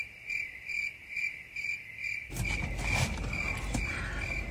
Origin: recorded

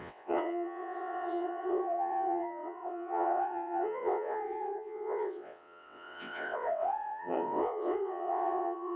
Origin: remade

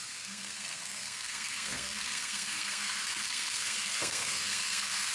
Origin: remade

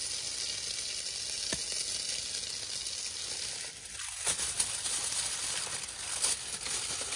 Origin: recorded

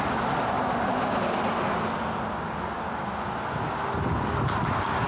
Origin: recorded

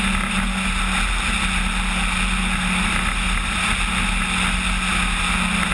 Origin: recorded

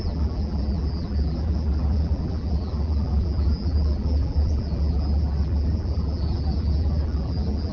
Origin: remade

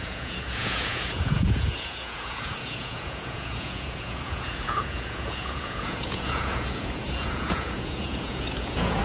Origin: remade